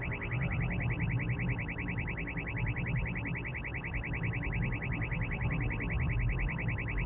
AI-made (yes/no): no